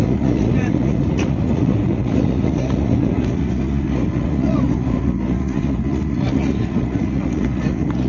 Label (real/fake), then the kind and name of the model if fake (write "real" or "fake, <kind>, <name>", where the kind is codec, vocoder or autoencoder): fake, vocoder, Vocos